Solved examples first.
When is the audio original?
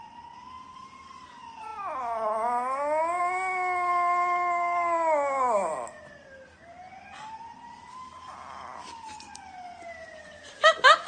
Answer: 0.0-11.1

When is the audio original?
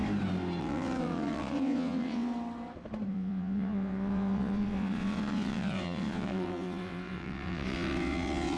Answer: 0.0-0.6; 2.3-3.1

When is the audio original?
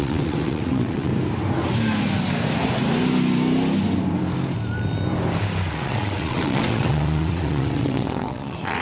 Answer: 1.1-5.7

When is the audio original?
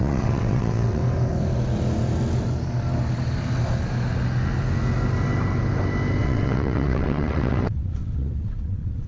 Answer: 1.0-6.2